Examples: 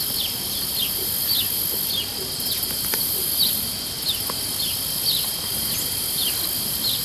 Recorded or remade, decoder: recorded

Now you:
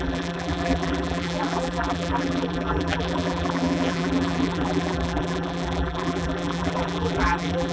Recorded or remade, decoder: remade, vocoder, BigVGAN v2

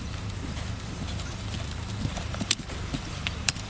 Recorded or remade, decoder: remade, vocoder, BigVGAN v2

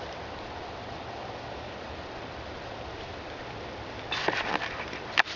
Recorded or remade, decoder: remade, vocoder, BigVGAN v2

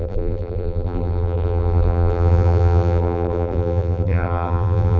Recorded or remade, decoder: remade, vocoder, BigVGAN v2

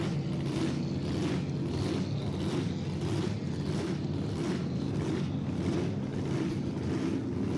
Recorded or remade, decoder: recorded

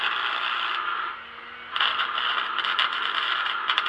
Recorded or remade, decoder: recorded